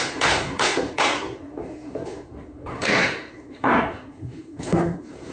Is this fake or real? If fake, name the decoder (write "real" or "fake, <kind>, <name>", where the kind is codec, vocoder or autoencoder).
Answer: fake, codec, SNAC